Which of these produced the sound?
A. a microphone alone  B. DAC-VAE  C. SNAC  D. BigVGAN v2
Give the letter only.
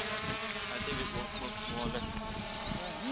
A